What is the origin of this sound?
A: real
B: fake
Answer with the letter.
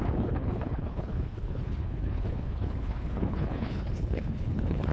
B